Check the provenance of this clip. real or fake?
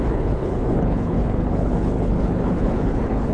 fake